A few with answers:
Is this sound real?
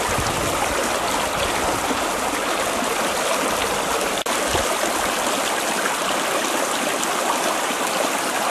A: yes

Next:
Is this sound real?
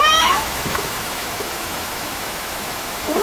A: no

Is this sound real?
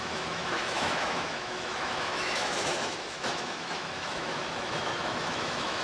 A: no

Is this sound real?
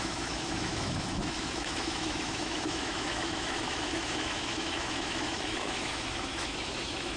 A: no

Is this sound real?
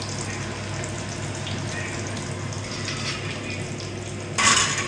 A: yes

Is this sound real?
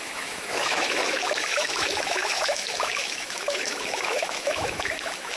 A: no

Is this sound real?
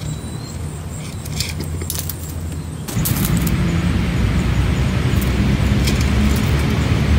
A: yes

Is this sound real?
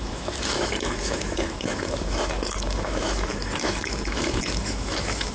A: no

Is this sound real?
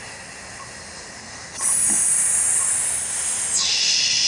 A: yes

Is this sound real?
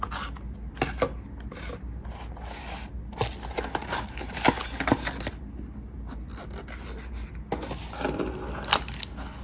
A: yes